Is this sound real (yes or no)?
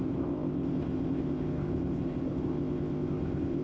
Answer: no